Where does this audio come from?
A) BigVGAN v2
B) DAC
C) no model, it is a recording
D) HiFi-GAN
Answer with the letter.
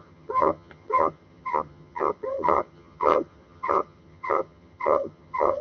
D